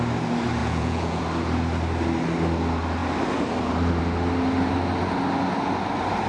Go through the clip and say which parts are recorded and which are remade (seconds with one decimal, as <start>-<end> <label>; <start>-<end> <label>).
0.0-0.6 recorded; 0.6-1.2 remade; 1.2-6.3 recorded